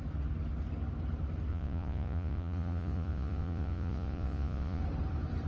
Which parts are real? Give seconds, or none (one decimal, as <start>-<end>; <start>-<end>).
0.0-1.5; 4.8-5.5